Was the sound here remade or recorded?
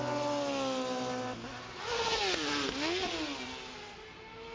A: recorded